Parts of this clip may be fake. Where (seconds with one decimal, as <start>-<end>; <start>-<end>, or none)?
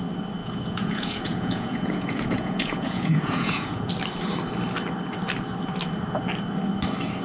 0.4-3.9